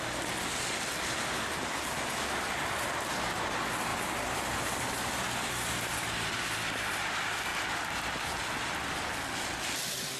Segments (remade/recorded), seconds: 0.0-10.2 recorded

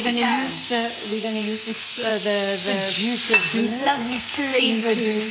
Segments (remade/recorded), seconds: 0.0-2.1 remade; 2.1-3.6 recorded; 3.6-5.3 remade

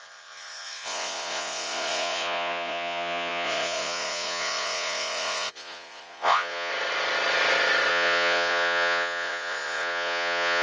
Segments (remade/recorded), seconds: 0.0-6.7 remade; 6.7-7.9 recorded; 7.9-10.6 remade

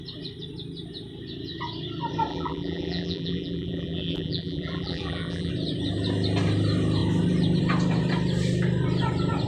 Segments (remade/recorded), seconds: 0.0-2.3 recorded; 2.3-5.5 remade; 5.5-9.5 recorded